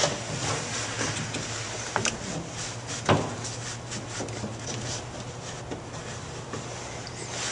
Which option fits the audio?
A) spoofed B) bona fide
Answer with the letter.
B